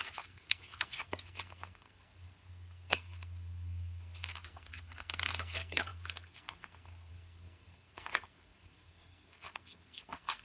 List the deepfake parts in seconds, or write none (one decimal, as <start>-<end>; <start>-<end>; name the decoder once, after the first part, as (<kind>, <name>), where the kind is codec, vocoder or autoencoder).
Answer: 0.0-10.4 (codec, SNAC)